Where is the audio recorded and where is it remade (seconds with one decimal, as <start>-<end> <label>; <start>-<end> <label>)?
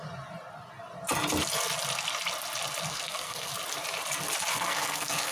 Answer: 0.0-2.9 recorded; 2.9-3.5 remade; 3.5-4.5 recorded; 4.5-5.3 remade